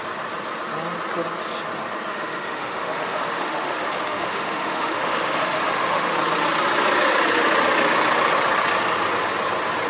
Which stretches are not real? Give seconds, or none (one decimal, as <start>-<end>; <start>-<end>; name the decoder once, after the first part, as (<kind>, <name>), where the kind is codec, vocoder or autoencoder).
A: 2.1-6.1 (autoencoder, DAC-VAE)